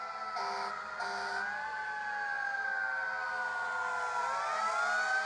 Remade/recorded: recorded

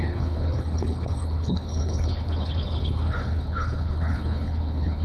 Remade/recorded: remade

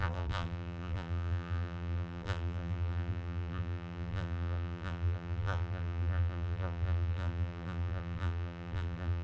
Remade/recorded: remade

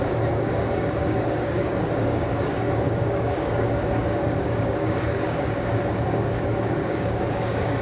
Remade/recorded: remade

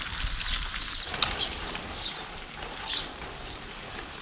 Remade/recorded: recorded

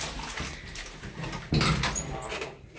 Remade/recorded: recorded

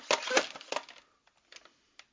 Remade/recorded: recorded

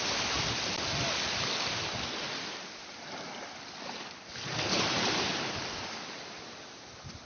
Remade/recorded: recorded